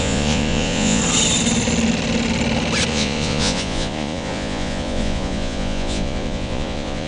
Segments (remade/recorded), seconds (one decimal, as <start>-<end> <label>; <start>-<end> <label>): 0.0-1.0 remade; 1.0-2.9 recorded; 2.9-7.1 remade